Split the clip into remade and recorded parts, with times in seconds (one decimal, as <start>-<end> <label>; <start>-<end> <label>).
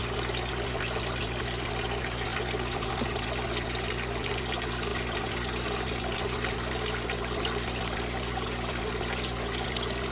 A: 0.0-0.5 remade; 0.5-2.3 recorded; 2.3-2.9 remade; 2.9-4.9 recorded; 4.9-5.9 remade; 5.9-10.1 recorded